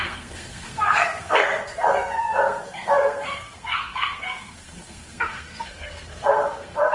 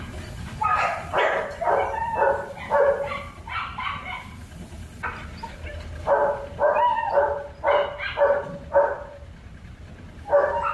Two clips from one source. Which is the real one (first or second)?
second